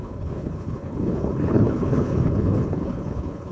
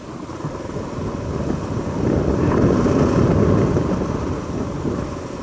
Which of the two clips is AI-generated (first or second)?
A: first